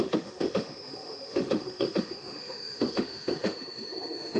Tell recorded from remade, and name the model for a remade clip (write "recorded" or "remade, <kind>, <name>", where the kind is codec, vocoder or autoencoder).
remade, autoencoder, DAC-VAE